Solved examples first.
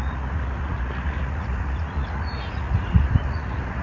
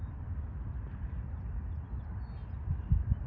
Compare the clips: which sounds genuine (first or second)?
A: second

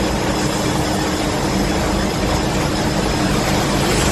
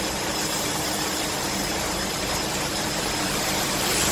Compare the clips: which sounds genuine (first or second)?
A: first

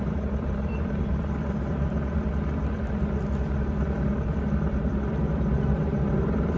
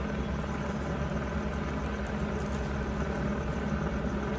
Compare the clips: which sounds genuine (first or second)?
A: second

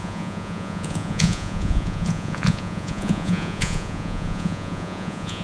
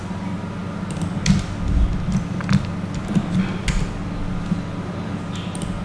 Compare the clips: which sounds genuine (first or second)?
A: second